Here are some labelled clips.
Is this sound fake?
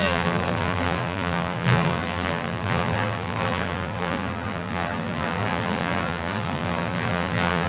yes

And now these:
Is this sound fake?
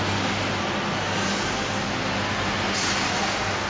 no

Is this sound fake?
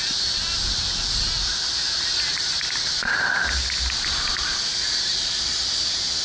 no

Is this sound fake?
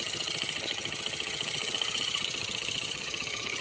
yes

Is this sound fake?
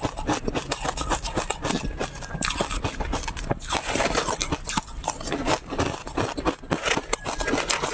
no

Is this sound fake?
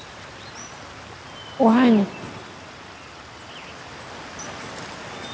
no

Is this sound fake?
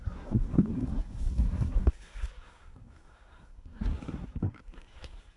yes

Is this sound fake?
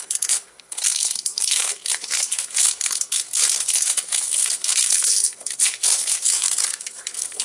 yes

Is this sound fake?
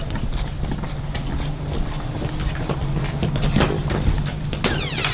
no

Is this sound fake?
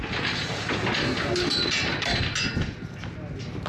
no